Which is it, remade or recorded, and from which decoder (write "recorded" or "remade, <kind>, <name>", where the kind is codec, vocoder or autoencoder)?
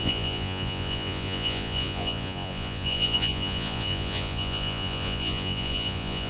remade, vocoder, Vocos